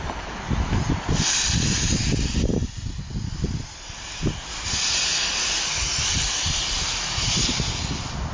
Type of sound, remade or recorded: recorded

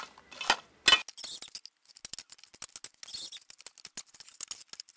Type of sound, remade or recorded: recorded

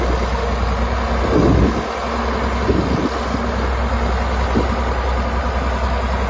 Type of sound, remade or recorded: recorded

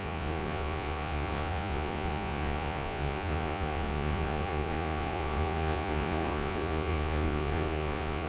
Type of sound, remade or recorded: remade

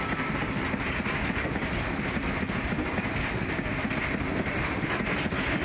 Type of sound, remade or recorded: recorded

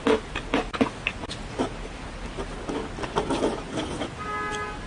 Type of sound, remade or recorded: recorded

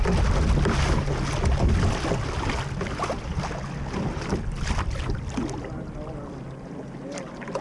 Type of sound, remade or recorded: recorded